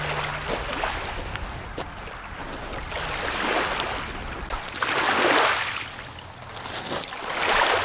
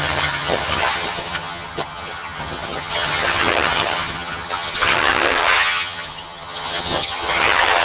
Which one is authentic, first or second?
first